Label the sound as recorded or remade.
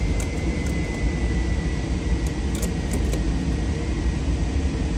recorded